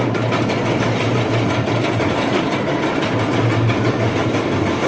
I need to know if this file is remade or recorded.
recorded